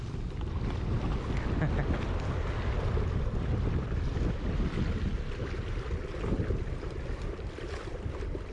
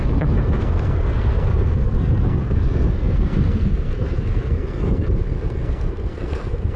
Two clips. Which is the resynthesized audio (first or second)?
second